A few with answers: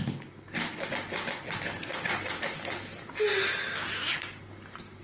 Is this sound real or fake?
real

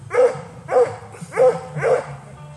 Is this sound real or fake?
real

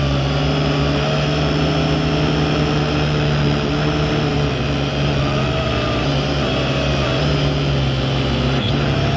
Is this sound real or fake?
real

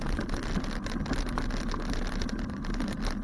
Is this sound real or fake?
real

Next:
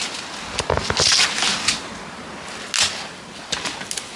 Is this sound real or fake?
real